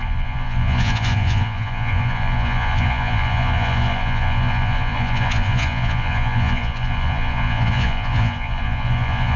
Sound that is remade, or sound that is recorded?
remade